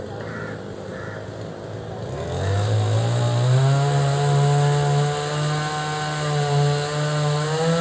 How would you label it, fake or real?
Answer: real